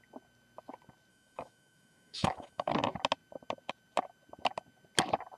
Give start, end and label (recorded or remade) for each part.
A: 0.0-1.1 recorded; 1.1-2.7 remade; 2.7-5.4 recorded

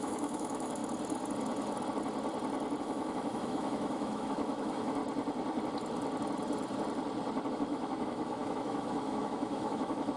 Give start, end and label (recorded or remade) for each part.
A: 0.0-0.8 remade; 0.8-2.8 recorded; 2.8-5.0 remade; 5.0-7.5 recorded; 7.5-10.2 remade

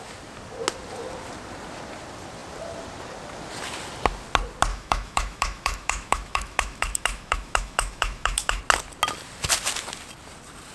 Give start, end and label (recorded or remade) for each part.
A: 0.0-4.7 recorded; 4.7-8.6 remade; 8.6-10.7 recorded

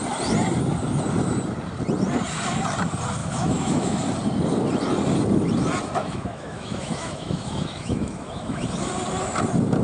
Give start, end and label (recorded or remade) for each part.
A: 0.0-3.2 recorded; 3.2-4.0 remade; 4.0-6.0 recorded; 6.0-8.9 remade; 8.9-9.8 recorded

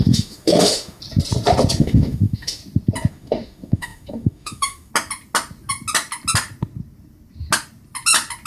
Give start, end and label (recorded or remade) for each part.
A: 0.0-1.0 remade; 1.0-1.8 recorded; 1.8-2.6 remade; 2.6-3.1 recorded; 3.1-4.9 remade; 4.9-8.5 recorded

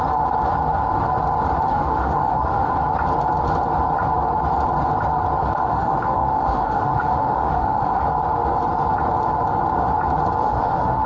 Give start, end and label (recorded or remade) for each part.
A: 0.0-1.7 recorded; 1.7-2.7 remade; 2.7-5.6 recorded; 5.6-8.0 remade; 8.0-10.4 recorded; 10.4-11.1 remade

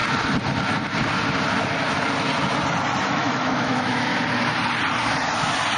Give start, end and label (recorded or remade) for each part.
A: 0.0-3.0 recorded; 3.0-4.1 remade; 4.1-5.8 recorded